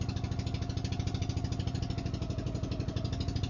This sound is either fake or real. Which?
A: real